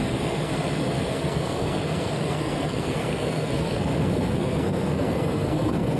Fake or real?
fake